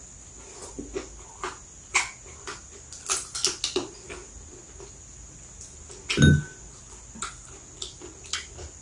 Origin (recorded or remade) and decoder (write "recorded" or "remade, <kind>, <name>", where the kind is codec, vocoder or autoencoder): recorded